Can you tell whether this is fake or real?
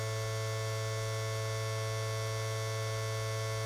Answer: real